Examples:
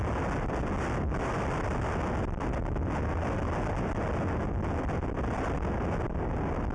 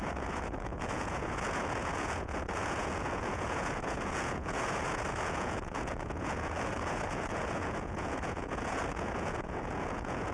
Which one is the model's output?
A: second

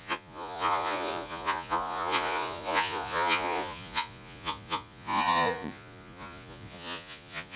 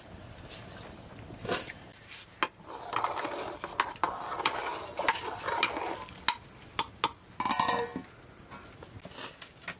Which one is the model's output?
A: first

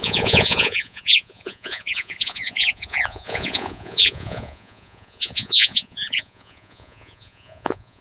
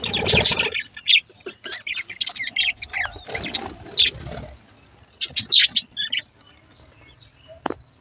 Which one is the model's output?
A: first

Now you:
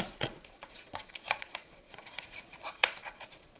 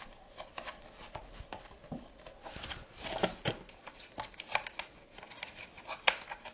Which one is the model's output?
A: first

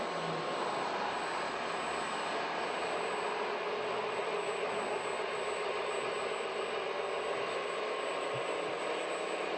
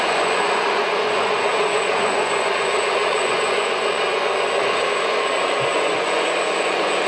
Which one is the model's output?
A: second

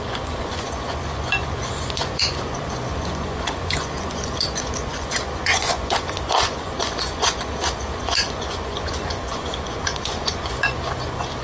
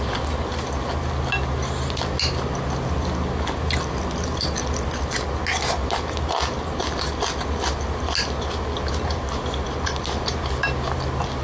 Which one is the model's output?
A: first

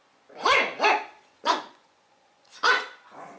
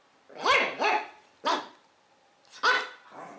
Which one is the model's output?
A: first